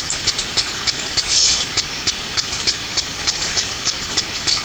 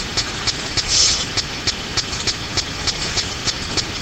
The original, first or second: second